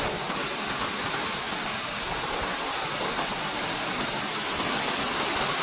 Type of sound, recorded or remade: recorded